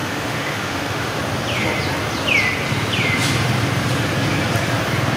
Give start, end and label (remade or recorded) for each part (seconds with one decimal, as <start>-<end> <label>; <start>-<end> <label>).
0.0-1.2 remade; 1.2-5.2 recorded